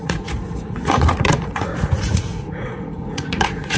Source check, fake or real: fake